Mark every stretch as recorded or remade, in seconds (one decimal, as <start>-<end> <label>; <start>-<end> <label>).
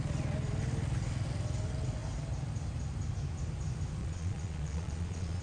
0.0-4.0 recorded; 4.0-5.4 remade